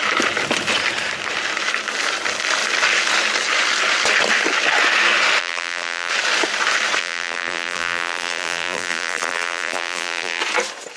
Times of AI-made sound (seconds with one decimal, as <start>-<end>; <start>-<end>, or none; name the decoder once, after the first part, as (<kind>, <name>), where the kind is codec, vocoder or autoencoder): 5.4-6.1 (vocoder, BigVGAN v2); 7.0-10.4